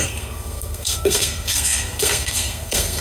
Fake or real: fake